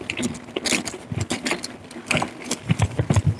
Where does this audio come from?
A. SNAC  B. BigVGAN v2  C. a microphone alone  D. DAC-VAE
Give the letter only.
C